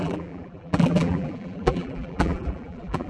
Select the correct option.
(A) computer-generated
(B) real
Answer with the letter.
A